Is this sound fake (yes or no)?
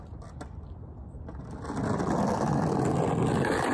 no